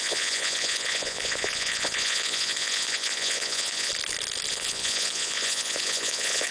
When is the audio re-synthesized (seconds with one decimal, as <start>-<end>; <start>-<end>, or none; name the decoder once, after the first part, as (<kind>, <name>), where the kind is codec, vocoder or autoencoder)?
0.0-3.9 (vocoder, Vocos); 4.5-6.5